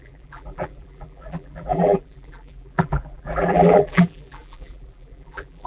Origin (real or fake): fake